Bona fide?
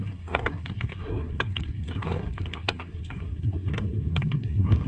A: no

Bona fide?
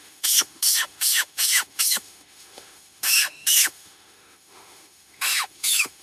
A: no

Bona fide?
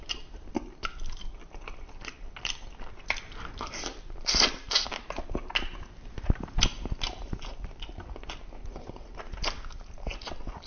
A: yes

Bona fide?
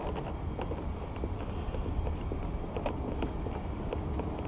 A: yes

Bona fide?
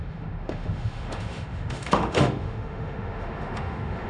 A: no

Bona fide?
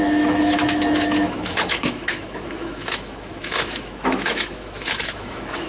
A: no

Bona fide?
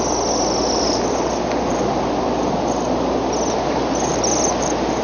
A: yes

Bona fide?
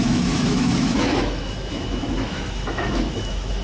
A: no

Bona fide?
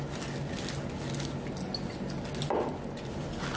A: yes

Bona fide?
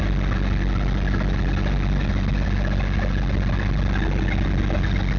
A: yes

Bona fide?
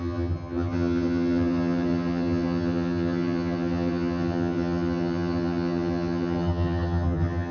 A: no